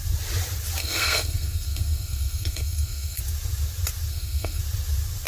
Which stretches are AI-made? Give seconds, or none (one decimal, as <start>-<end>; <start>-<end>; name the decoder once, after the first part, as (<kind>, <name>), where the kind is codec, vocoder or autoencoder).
0.8-3.2 (codec, SNAC); 4.1-4.6